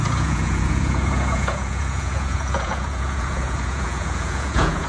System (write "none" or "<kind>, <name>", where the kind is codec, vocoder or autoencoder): vocoder, Vocos